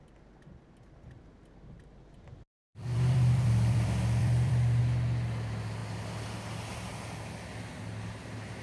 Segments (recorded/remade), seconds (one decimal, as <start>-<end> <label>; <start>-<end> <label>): 0.0-2.3 recorded; 2.3-4.8 remade; 4.8-8.6 recorded